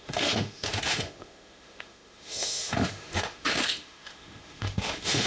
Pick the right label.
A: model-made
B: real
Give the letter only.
A